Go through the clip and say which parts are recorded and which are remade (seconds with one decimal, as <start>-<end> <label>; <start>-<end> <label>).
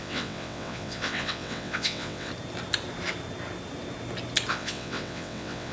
0.0-2.3 remade; 2.3-4.5 recorded; 4.5-5.7 remade